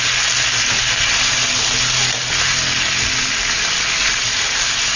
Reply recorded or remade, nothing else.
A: recorded